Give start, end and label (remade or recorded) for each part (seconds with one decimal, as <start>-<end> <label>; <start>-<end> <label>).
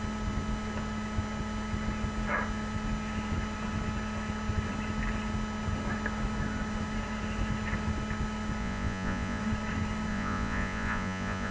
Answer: 0.0-8.6 recorded; 8.6-9.4 remade; 9.4-10.1 recorded; 10.1-11.5 remade